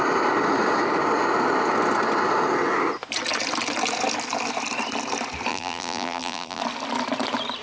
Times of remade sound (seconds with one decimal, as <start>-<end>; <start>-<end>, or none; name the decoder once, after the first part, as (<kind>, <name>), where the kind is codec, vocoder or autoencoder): 5.5-6.6 (vocoder, BigVGAN v2)